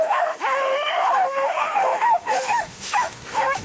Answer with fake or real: fake